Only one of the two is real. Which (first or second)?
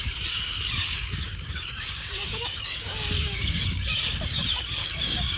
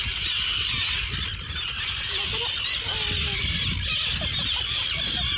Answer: second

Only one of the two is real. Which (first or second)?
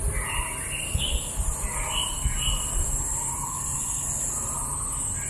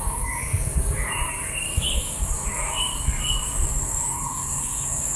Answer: first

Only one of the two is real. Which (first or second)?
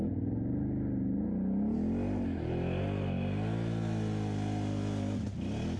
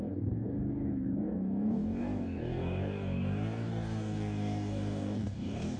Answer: first